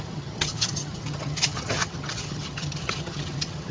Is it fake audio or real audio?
fake